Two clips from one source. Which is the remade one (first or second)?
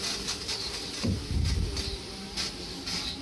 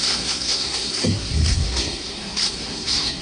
second